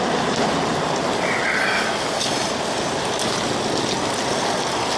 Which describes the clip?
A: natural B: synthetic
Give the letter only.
A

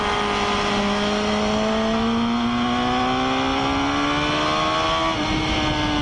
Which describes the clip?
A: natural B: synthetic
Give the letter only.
A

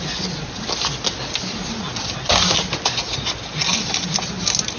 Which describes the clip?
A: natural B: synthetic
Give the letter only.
A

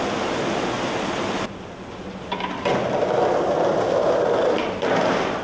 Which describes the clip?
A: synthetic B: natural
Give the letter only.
B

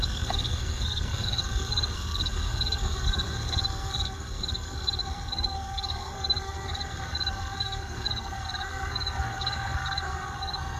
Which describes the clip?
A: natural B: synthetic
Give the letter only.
B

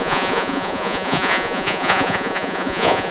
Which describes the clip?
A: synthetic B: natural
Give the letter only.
A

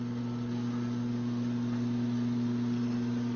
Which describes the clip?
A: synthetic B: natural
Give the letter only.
B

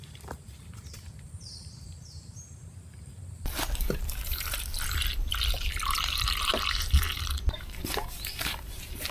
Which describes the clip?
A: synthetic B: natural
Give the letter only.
A